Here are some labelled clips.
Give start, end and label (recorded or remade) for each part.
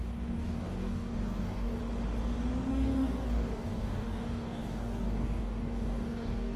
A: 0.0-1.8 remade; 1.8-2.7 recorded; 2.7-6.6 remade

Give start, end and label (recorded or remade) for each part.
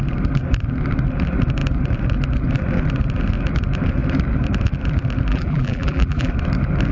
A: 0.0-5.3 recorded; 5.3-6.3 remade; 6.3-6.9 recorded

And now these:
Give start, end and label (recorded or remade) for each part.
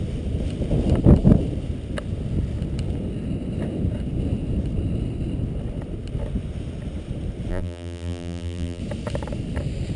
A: 0.0-7.5 recorded; 7.5-8.8 remade; 8.8-10.0 recorded